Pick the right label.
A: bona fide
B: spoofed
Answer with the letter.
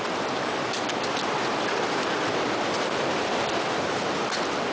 A